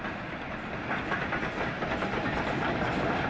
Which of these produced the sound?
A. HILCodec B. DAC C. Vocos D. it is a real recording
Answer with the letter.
D